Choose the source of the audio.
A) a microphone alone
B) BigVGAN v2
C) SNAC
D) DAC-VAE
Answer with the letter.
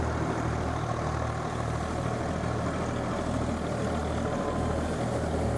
A